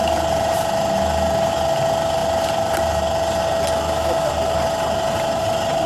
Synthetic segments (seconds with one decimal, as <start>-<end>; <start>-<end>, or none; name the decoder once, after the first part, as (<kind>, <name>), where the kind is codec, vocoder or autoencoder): none